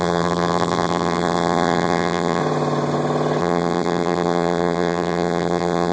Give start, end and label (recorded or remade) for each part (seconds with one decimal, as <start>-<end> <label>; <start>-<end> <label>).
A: 0.0-2.4 remade; 2.4-3.4 recorded; 3.4-5.9 remade